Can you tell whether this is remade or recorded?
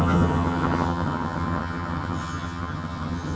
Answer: remade